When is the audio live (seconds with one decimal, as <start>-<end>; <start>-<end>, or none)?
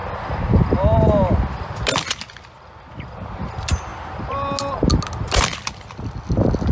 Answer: 0.0-6.7